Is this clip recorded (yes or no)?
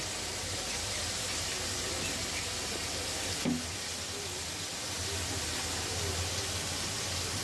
yes